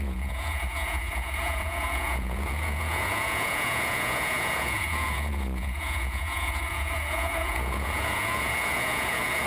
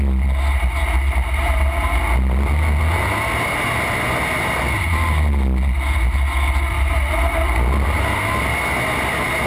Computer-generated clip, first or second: first